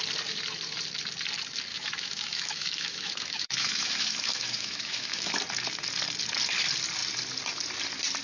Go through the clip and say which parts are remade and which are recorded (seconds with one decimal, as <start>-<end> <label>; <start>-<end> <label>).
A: 0.0-1.7 recorded; 1.7-5.3 remade; 5.3-8.2 recorded